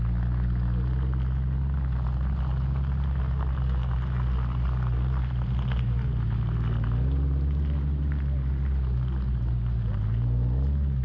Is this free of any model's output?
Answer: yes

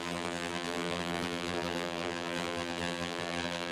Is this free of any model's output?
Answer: no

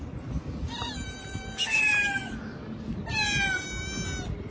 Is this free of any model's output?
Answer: yes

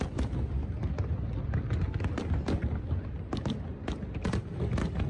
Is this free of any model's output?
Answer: yes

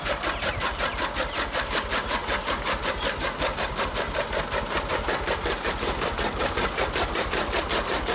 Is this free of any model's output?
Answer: yes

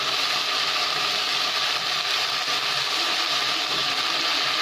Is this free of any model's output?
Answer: yes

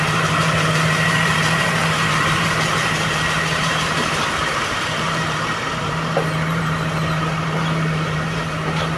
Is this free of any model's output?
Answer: no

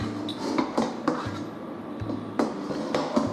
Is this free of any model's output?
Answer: no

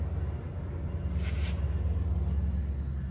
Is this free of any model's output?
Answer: yes